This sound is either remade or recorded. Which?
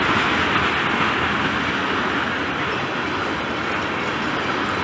recorded